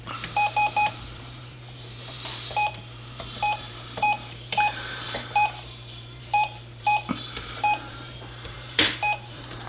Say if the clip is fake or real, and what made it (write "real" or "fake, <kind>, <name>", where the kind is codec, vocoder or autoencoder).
fake, vocoder, BigVGAN v2